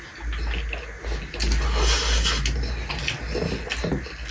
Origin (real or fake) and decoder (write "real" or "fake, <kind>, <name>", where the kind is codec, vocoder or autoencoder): real